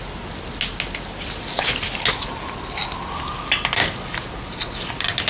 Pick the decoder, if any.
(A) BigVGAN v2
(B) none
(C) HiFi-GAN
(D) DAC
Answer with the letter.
B